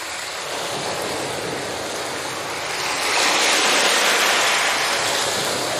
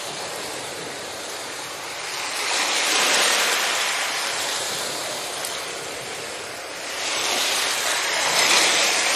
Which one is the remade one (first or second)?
second